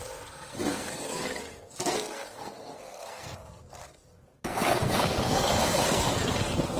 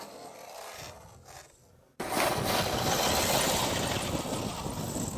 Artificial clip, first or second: first